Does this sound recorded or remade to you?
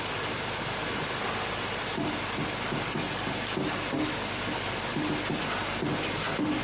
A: recorded